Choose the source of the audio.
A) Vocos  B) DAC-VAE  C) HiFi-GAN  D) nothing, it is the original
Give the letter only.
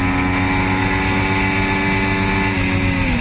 D